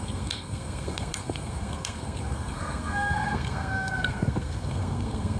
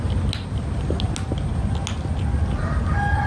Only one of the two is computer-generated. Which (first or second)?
first